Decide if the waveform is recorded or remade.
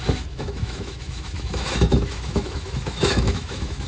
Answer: remade